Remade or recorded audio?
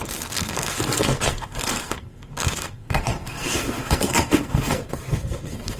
remade